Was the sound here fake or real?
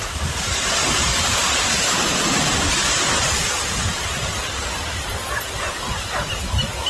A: real